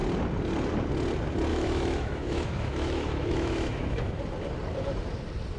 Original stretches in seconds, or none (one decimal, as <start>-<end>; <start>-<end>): 0.0-1.5; 4.2-5.6